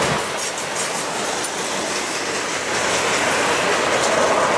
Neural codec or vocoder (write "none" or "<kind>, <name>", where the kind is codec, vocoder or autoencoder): none